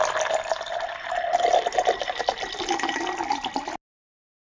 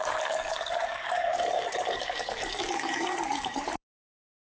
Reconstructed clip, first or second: second